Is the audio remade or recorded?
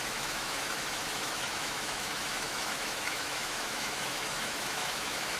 remade